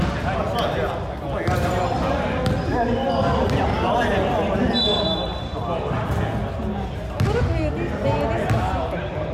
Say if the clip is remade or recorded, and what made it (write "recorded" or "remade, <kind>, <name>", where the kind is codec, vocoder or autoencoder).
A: recorded